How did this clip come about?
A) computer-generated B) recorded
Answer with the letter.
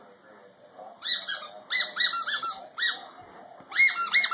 B